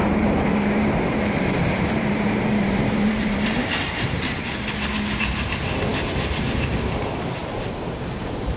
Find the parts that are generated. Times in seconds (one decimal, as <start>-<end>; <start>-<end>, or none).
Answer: 0.0-4.4; 7.4-8.6